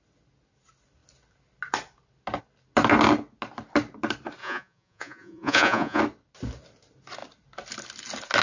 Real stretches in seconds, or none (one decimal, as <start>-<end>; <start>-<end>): 0.0-4.4; 6.0-8.4